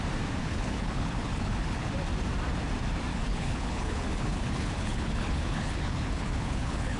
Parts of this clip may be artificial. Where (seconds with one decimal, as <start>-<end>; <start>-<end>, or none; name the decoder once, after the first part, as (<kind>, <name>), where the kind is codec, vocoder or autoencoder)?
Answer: 0.4-1.9 (codec, HILCodec); 3.1-7.0